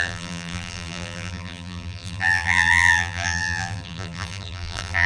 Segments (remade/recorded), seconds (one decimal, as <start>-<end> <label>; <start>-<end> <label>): 0.0-5.1 remade